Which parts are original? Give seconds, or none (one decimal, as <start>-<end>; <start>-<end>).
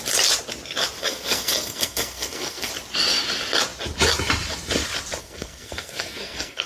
0.0-1.0; 2.7-5.2